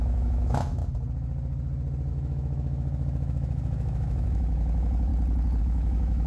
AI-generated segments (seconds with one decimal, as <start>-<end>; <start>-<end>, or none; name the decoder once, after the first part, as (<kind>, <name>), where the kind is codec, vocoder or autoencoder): 0.0-0.8 (autoencoder, DAC-VAE); 2.1-5.1; 5.6-6.3